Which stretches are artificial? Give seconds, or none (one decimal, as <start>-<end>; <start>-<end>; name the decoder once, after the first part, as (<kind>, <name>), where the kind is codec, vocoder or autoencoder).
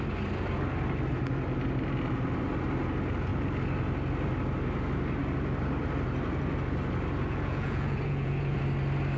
7.3-8.6 (vocoder, Vocos)